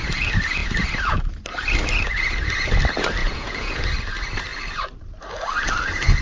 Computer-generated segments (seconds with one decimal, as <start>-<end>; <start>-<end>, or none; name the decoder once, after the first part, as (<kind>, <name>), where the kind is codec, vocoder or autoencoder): 3.2-3.8 (vocoder, Vocos)